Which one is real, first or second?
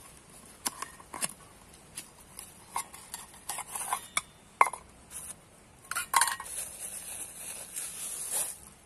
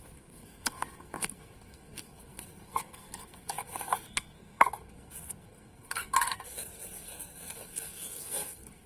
first